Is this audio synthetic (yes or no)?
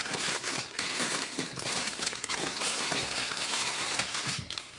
yes